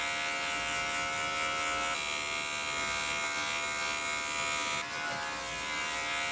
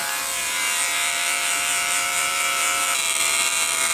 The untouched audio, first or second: first